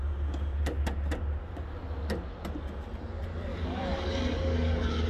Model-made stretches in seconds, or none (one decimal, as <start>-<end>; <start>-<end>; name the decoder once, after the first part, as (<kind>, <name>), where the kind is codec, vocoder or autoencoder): 3.5-5.1 (codec, DAC)